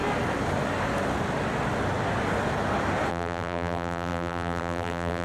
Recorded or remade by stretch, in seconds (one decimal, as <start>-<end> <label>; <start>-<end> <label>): 0.0-3.1 recorded; 3.1-5.2 remade